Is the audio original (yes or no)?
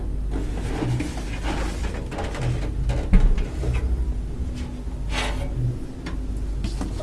yes